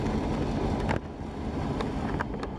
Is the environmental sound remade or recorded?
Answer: recorded